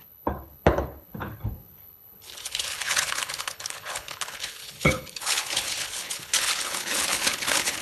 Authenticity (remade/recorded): remade